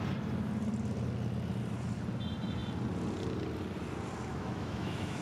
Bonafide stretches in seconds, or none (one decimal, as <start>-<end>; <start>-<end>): 0.0-4.3

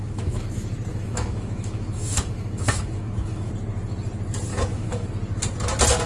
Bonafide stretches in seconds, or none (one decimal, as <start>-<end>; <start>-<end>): 0.5-0.9; 3.5-4.5; 5.1-6.1

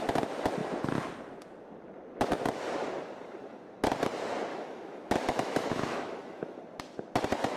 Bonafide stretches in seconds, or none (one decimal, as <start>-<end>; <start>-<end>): 0.0-4.5; 6.6-7.6

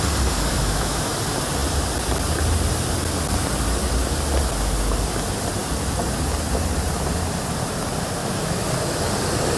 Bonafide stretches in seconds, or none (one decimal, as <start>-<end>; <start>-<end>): 0.0-0.5; 1.1-8.2; 8.7-9.6

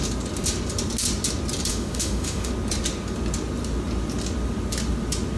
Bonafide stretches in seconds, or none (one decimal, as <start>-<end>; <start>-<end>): 0.0-1.7; 2.5-5.4

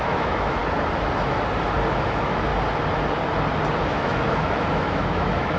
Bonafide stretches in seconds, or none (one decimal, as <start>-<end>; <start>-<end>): 0.6-1.9; 2.5-3.8

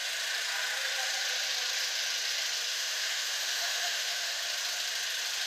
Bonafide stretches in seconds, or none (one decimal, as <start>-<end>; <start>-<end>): 0.0-2.7; 4.4-5.5